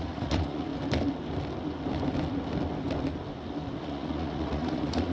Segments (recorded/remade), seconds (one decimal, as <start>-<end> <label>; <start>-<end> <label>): 0.0-0.7 remade; 0.7-3.8 recorded; 3.8-5.1 remade